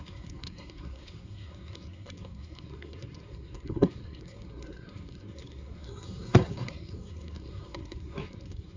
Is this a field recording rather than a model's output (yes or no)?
no